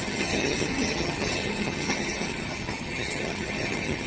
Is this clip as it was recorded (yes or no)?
no